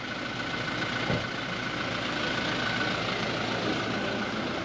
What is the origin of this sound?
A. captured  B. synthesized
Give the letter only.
A